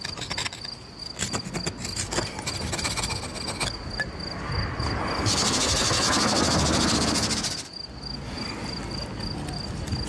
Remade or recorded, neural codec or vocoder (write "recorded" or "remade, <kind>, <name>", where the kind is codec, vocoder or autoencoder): recorded